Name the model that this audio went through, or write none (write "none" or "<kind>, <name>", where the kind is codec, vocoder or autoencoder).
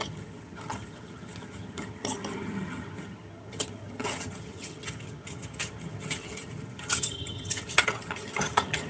vocoder, HiFi-GAN